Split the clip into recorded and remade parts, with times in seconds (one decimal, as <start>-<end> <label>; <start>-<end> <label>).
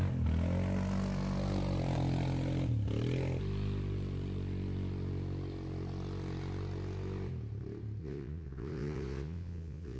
0.0-8.0 recorded; 8.0-10.0 remade